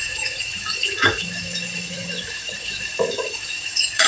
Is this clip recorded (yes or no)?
no